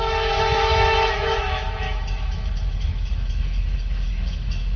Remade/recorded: remade